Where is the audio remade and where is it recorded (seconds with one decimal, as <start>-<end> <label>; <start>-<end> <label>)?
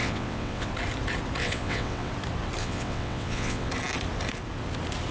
0.0-0.7 remade; 0.7-1.4 recorded; 1.4-2.1 remade; 2.1-2.6 recorded; 2.6-3.7 remade; 3.7-5.1 recorded